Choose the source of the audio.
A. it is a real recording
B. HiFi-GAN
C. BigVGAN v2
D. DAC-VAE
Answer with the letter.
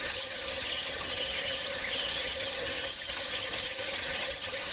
B